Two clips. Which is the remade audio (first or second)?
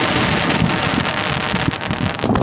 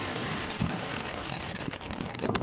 second